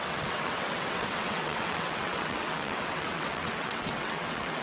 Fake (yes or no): yes